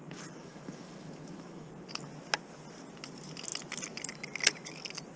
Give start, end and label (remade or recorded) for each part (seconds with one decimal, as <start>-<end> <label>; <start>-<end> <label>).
0.0-0.4 recorded; 0.4-1.7 remade; 1.7-5.2 recorded

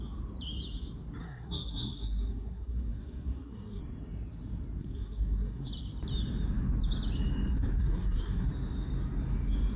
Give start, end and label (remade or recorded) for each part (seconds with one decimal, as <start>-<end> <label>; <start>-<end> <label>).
0.0-1.2 recorded; 1.2-3.8 remade; 3.8-4.8 recorded; 4.8-5.7 remade; 5.7-7.8 recorded; 7.8-8.5 remade; 8.5-9.8 recorded

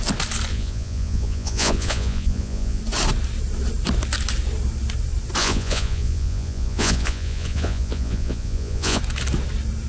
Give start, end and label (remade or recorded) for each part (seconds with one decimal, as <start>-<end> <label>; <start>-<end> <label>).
0.0-0.5 recorded; 0.5-2.8 remade; 2.8-5.4 recorded; 5.4-9.0 remade; 9.0-9.9 recorded

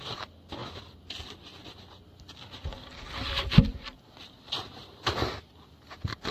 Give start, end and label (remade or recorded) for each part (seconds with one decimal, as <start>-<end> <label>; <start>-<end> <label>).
0.0-6.3 recorded